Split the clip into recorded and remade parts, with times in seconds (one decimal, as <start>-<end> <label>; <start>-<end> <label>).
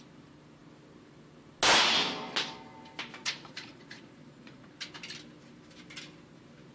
0.0-3.2 recorded; 3.2-4.7 remade; 4.7-6.7 recorded